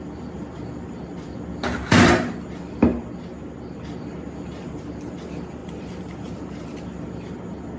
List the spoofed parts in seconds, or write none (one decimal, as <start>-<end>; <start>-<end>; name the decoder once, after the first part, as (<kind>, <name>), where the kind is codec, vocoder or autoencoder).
none